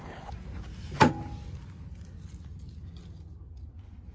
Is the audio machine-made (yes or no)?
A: no